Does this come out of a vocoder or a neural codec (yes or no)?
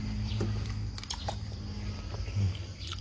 no